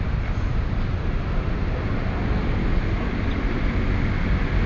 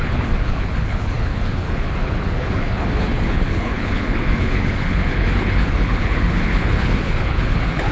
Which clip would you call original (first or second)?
first